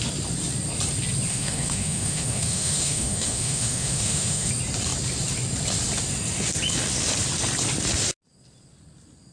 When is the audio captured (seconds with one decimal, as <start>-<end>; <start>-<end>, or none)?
0.0-1.3; 4.5-9.3